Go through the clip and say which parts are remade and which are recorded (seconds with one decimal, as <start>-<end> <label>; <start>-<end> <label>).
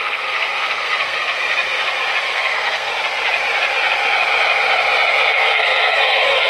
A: 0.0-1.4 remade; 1.4-2.2 recorded; 2.2-2.9 remade; 2.9-5.3 recorded; 5.3-6.5 remade